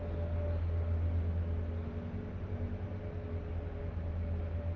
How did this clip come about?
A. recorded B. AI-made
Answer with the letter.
A